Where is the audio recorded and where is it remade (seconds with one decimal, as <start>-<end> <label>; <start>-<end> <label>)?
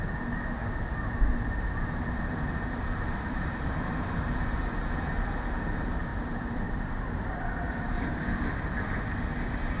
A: 0.0-1.3 recorded; 1.3-4.5 remade; 4.5-6.1 recorded; 6.1-7.9 remade; 7.9-9.8 recorded